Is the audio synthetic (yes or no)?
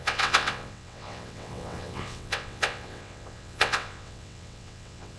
yes